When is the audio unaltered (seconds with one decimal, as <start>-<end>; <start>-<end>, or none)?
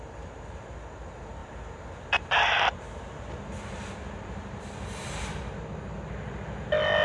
0.0-1.4; 4.6-5.0; 5.6-7.0